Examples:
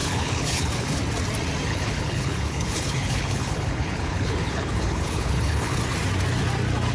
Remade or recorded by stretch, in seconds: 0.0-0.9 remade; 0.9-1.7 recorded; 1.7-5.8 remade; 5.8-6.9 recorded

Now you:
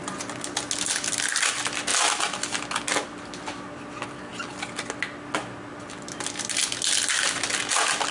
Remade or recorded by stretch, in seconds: 0.0-8.1 recorded

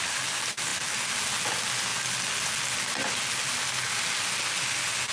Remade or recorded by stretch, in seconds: 0.0-5.1 recorded

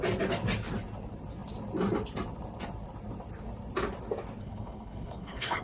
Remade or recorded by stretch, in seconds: 0.0-4.4 recorded; 4.4-5.6 remade

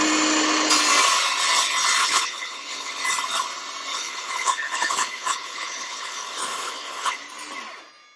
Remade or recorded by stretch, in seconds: 0.0-2.0 recorded; 2.0-3.0 remade; 3.0-3.9 recorded; 3.9-7.2 remade; 7.2-8.2 recorded